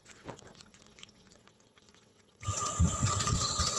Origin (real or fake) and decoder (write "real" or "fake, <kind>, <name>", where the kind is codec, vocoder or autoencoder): fake, vocoder, WaveNeXt